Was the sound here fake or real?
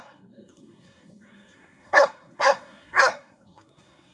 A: fake